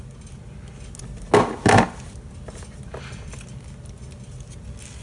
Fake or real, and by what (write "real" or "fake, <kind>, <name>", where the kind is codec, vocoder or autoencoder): real